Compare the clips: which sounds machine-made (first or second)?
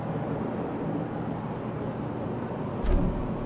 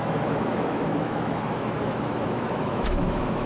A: second